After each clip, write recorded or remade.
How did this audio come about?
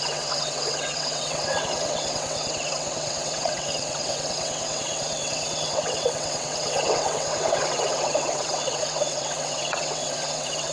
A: remade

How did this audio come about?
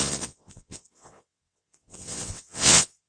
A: remade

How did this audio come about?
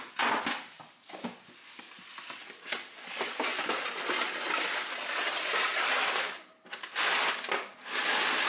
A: recorded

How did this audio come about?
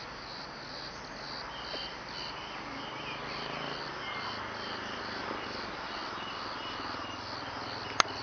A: recorded